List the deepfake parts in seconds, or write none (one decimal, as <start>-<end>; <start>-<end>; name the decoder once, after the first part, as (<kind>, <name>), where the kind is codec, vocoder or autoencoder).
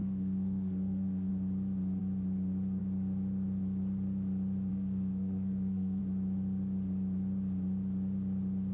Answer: 0.0-1.3 (codec, SNAC); 4.7-6.0